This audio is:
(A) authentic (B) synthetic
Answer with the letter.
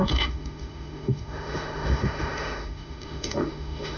B